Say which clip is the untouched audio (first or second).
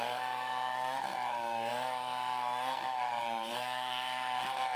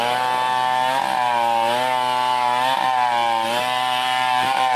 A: second